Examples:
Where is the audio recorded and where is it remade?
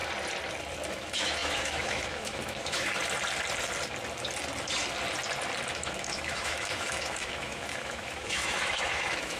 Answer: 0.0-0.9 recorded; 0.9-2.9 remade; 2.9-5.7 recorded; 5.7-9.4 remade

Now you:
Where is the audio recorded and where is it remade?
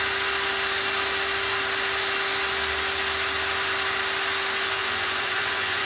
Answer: 0.0-4.8 recorded; 4.8-5.9 remade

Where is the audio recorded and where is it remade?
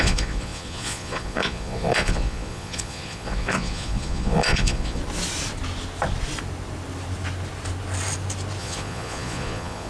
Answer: 0.0-5.0 remade; 5.0-8.6 recorded; 8.6-9.9 remade